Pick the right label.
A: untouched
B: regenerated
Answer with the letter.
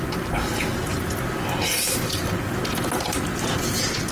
A